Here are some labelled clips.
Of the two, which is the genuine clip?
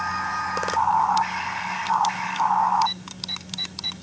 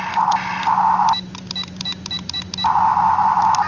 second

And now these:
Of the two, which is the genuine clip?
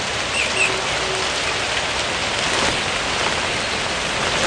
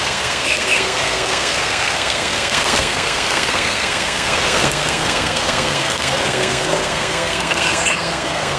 first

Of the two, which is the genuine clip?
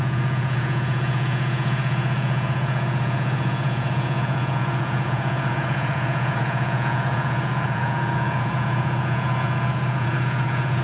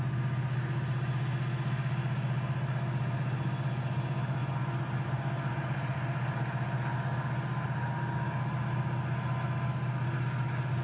second